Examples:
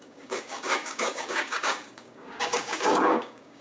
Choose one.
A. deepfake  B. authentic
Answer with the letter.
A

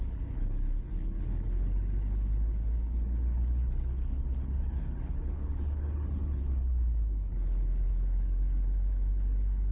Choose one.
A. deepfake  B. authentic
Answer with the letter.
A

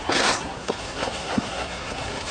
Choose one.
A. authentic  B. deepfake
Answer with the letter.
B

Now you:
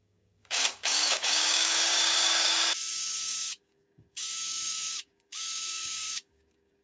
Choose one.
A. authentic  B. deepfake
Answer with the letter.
B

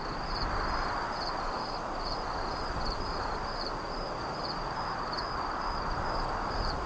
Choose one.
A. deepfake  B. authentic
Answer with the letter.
B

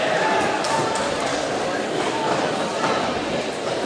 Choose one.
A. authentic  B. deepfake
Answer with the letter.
A